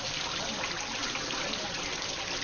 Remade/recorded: recorded